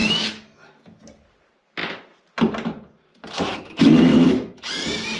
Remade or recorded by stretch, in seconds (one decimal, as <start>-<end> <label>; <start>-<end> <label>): 0.0-1.0 remade; 1.0-4.1 recorded; 4.1-4.7 remade; 4.7-5.2 recorded